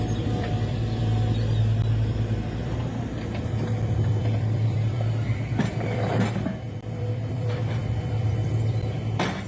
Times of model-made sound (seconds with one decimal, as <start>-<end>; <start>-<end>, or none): 0.0-1.0; 2.6-9.5